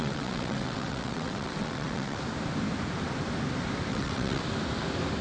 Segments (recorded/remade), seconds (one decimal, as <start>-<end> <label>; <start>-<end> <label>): 0.0-2.2 remade; 2.2-3.9 recorded; 3.9-4.4 remade; 4.4-5.2 recorded